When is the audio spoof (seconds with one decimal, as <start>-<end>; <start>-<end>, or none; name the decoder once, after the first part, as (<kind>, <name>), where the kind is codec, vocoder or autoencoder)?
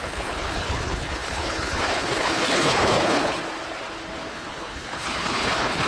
0.0-3.4 (codec, HILCodec); 4.3-5.9